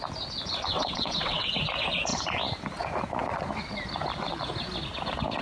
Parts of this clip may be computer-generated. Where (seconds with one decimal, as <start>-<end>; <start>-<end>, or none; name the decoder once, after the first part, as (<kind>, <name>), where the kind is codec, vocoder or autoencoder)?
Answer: 0.7-1.5 (vocoder, WaveNeXt)